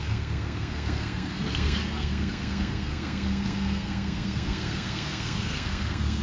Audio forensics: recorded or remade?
remade